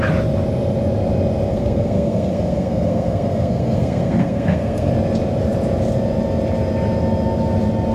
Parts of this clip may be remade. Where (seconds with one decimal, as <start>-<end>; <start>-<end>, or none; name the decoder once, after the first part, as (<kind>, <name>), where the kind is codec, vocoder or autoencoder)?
1.5-4.9 (codec, SNAC)